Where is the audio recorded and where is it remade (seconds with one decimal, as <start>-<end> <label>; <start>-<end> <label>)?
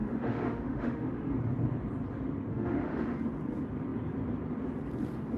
0.0-1.3 remade; 1.3-2.5 recorded; 2.5-3.0 remade; 3.0-5.4 recorded